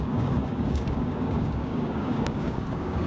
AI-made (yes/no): yes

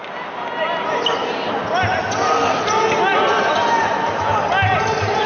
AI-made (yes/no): no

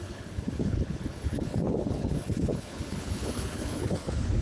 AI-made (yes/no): yes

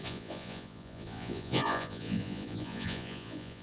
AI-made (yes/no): yes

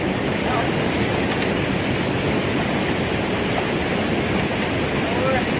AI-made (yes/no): no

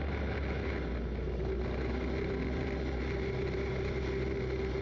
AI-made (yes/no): no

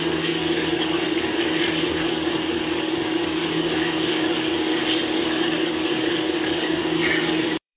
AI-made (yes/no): yes